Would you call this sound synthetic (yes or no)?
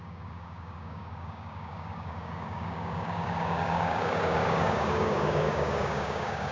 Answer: yes